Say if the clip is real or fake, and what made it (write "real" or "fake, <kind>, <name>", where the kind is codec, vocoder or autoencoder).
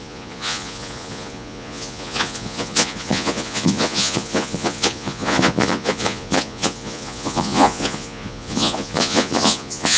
fake, vocoder, Vocos